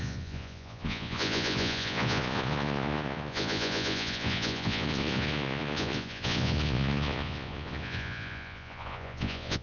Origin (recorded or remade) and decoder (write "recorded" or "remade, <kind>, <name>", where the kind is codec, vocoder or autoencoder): remade, vocoder, Vocos